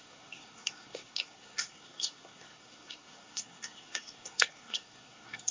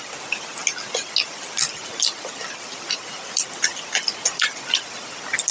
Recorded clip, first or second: second